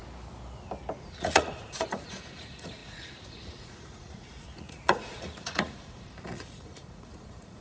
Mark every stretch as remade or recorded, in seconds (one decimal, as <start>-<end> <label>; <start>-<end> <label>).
0.0-1.0 recorded; 1.0-7.6 remade